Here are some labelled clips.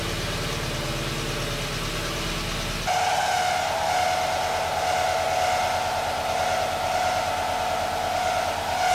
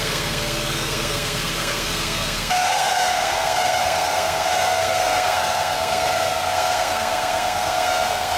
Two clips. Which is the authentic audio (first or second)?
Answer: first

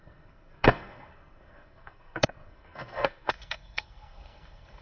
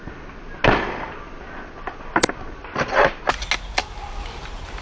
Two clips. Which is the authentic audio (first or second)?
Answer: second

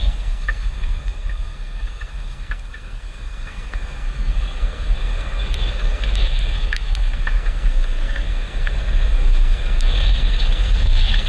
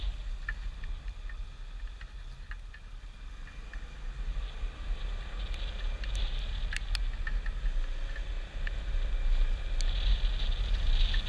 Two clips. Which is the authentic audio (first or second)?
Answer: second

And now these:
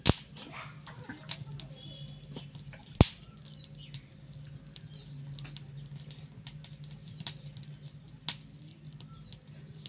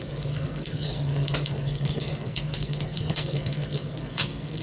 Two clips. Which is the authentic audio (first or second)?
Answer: first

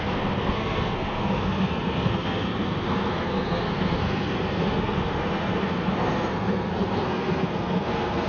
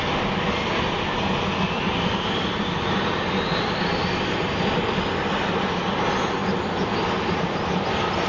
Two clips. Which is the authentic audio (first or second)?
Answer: second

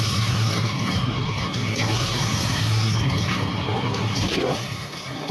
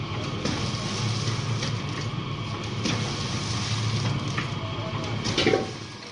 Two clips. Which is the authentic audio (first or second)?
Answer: second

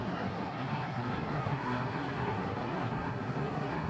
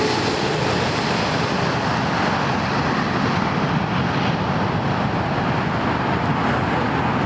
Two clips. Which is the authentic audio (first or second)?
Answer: second